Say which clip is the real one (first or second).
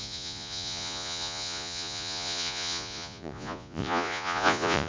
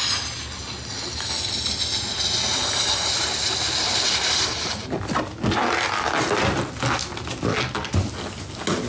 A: second